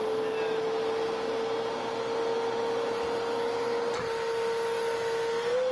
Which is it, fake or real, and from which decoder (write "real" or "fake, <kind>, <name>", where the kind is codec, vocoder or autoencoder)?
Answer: real